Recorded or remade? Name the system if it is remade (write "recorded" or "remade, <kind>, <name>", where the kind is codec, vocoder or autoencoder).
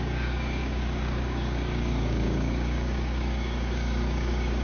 remade, codec, DAC